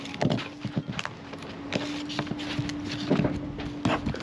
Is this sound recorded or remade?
recorded